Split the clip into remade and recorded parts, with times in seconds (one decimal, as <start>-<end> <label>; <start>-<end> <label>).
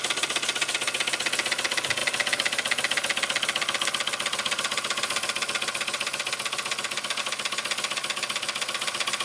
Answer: 0.0-9.2 recorded